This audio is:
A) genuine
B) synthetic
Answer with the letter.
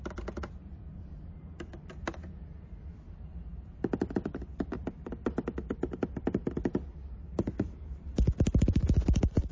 B